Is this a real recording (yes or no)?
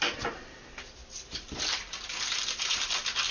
no